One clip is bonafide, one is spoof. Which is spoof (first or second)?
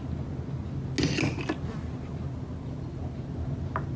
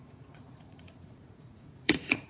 second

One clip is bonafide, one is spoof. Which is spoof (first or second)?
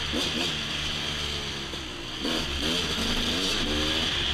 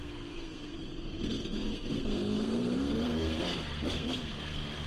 second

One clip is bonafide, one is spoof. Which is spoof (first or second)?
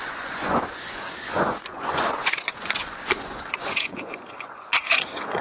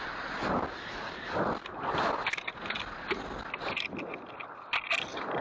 first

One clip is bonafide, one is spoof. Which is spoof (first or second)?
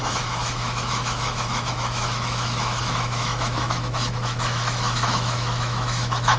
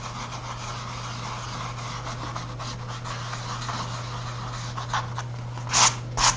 first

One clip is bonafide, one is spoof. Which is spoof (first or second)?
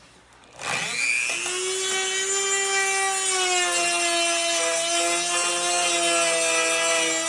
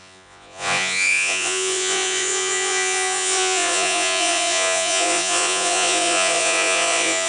second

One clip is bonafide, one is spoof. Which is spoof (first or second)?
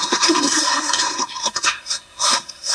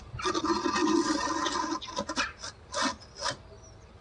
first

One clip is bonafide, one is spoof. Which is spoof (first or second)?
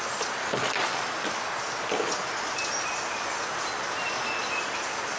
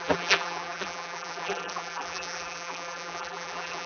second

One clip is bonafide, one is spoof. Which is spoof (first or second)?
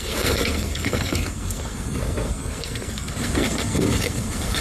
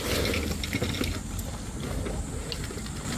first